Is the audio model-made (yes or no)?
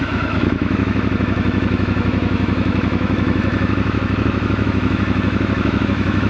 yes